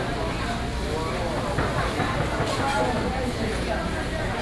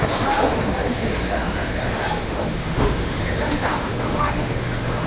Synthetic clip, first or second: second